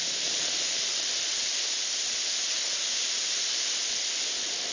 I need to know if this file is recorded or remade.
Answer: recorded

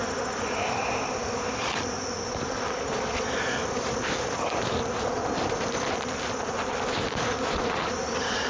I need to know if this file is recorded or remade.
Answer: recorded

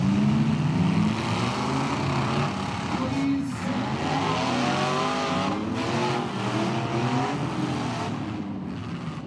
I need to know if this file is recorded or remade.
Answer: recorded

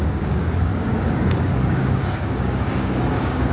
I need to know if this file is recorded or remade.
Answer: remade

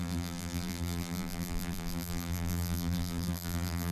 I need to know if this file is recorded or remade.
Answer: remade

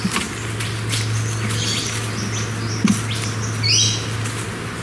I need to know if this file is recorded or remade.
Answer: recorded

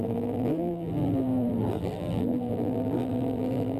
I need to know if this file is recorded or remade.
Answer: remade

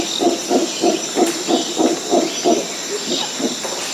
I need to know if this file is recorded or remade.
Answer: recorded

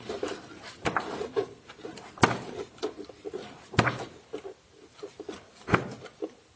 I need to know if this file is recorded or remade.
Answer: recorded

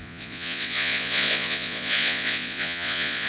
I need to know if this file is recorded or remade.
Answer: remade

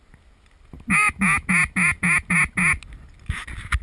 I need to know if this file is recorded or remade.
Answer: recorded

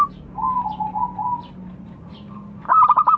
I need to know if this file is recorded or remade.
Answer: recorded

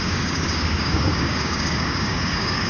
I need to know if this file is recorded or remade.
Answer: remade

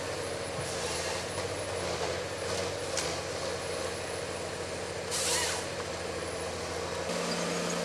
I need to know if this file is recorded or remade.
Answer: recorded